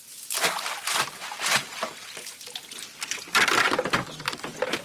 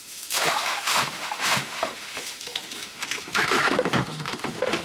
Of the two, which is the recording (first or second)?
first